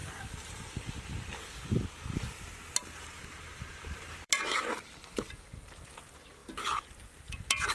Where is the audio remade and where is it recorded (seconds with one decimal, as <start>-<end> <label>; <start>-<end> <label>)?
0.0-0.8 remade; 0.8-2.8 recorded; 2.8-4.7 remade; 4.7-7.7 recorded